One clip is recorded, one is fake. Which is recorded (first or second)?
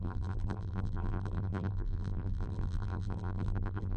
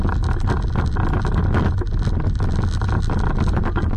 second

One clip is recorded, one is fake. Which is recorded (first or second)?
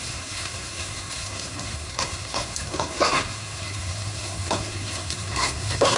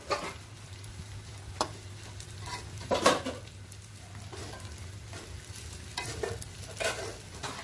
second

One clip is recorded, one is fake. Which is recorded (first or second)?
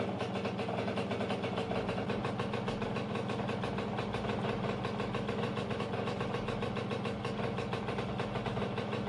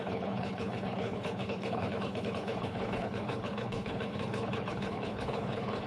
first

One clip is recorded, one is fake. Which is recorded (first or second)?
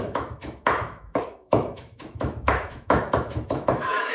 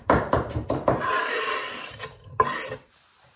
second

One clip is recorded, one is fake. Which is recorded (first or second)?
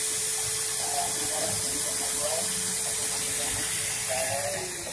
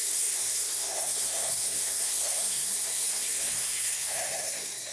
first